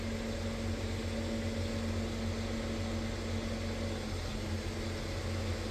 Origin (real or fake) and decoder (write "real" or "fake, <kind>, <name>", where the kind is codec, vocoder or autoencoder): real